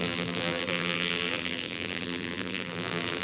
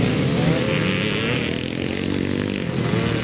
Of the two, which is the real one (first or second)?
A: second